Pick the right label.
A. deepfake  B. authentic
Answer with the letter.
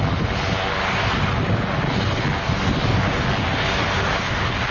B